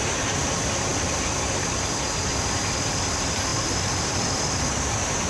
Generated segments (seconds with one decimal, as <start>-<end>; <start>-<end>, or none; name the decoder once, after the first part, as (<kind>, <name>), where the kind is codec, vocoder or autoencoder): none